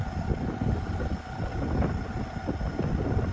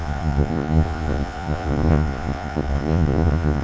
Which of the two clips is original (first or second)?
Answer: first